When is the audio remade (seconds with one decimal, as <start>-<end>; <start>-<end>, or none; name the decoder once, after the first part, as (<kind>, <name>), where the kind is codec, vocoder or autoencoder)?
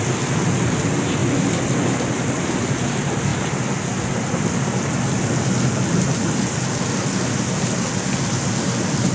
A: none